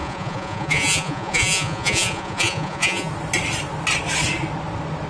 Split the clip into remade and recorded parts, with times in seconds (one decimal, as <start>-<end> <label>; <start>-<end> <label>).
0.0-3.1 remade; 3.1-5.1 recorded